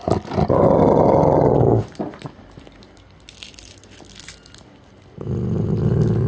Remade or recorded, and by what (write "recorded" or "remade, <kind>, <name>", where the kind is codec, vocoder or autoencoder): recorded